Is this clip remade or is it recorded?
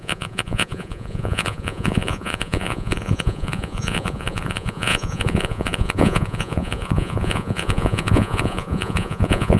remade